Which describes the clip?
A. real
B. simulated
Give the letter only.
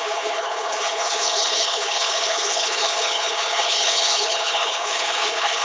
B